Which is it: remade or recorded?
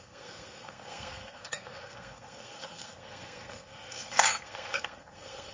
remade